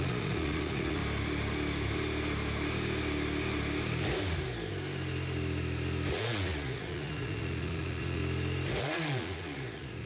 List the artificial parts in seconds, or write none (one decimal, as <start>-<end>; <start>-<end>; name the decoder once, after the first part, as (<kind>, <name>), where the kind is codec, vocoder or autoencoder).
0.0-1.0 (vocoder, Vocos); 6.1-8.2; 8.8-10.1